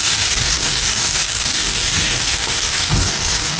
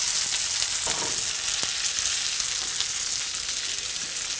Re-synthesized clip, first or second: first